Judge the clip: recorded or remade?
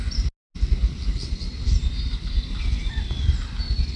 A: recorded